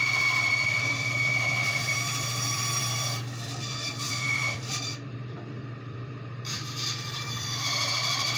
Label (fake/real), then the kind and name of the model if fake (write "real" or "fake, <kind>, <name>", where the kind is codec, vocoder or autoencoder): fake, vocoder, BigVGAN v2